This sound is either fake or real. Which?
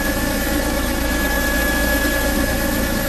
fake